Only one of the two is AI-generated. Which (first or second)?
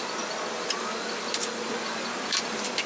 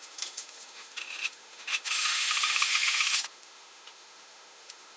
second